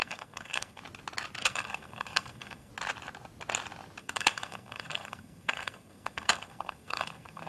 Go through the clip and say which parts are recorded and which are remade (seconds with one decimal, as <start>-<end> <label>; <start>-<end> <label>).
0.0-0.8 remade; 0.8-1.4 recorded; 1.4-2.7 remade; 2.7-4.0 recorded; 4.0-7.5 remade